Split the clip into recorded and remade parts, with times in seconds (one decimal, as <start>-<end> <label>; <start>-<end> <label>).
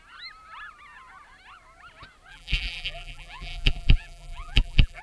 0.0-2.3 recorded; 2.3-5.0 remade